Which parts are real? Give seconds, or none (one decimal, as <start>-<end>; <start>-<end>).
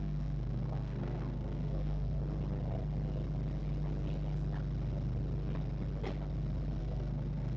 2.2-6.8